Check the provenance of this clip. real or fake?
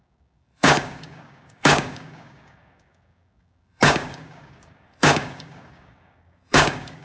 fake